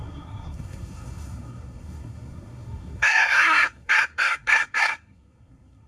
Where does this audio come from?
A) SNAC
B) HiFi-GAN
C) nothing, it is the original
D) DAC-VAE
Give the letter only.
A